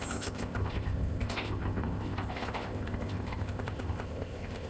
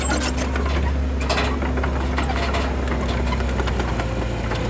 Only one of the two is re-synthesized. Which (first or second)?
first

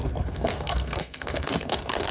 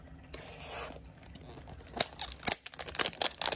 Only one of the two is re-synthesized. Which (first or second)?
first